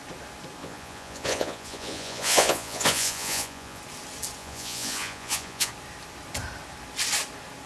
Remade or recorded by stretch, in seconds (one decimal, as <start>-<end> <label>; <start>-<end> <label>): 0.0-0.6 recorded; 0.6-3.8 remade; 3.8-4.4 recorded; 4.4-5.7 remade; 5.7-7.7 recorded